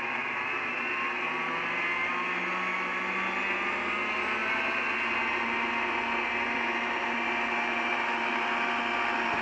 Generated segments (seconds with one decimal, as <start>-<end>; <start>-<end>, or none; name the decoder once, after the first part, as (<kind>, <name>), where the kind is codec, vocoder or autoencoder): none